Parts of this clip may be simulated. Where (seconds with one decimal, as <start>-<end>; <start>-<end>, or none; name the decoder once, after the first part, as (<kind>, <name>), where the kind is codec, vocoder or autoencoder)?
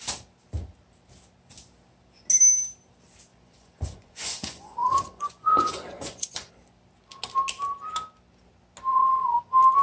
3.3-6.5 (vocoder, Vocos); 8.9-9.4